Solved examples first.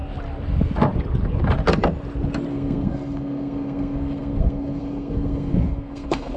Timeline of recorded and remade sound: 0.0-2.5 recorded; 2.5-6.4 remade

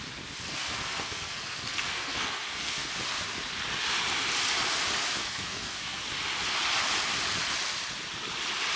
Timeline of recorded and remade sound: 0.0-0.5 recorded; 0.5-2.9 remade; 2.9-5.2 recorded; 5.2-6.0 remade; 6.0-8.8 recorded

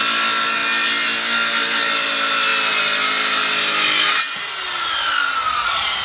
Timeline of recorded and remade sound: 0.0-6.0 recorded

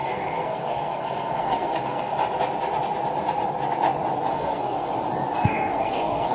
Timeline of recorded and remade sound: 0.0-2.1 remade; 2.1-4.3 recorded; 4.3-4.9 remade; 4.9-5.4 recorded; 5.4-6.3 remade

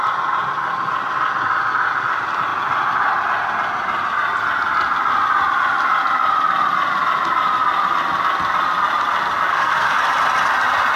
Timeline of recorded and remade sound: 0.0-9.5 recorded; 9.5-10.0 remade; 10.0-11.0 recorded

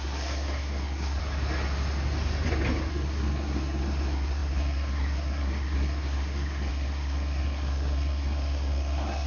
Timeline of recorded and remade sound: 0.0-1.2 remade; 1.2-2.9 recorded; 2.9-9.3 remade

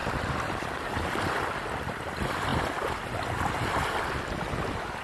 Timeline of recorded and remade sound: 0.0-5.0 recorded